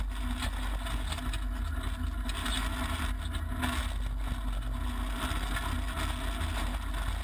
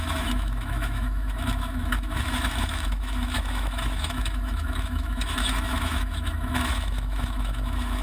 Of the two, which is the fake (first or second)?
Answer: second